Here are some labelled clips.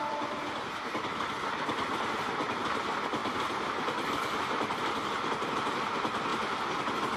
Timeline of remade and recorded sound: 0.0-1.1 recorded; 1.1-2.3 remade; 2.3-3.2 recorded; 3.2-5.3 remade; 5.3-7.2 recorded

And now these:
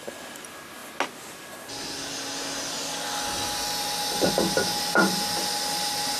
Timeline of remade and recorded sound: 0.0-6.2 recorded

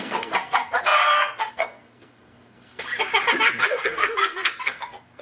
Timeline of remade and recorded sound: 0.0-2.9 remade; 2.9-3.6 recorded; 3.6-5.2 remade

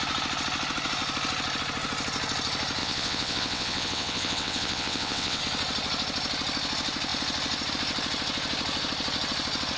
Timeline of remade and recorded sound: 0.0-2.8 recorded; 2.8-5.4 remade; 5.4-9.8 recorded

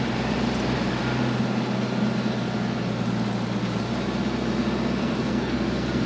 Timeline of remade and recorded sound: 0.0-5.0 recorded; 5.0-6.1 remade

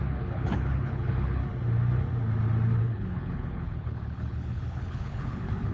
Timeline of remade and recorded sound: 0.0-1.4 remade; 1.4-2.8 recorded; 2.8-5.7 remade